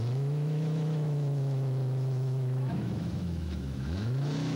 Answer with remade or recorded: remade